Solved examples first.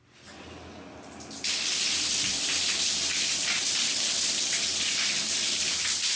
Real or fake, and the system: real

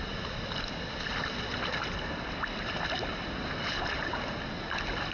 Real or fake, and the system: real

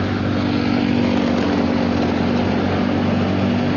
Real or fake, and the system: real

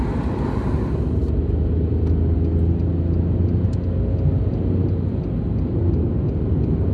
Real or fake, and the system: real